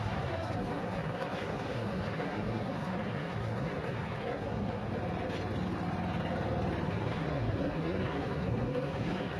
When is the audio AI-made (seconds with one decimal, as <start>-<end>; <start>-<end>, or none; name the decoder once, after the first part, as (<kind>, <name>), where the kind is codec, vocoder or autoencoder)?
0.0-4.9 (codec, SNAC); 6.9-9.4